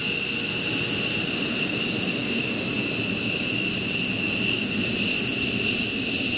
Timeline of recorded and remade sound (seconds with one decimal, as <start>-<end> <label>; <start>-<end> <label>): 0.0-6.4 recorded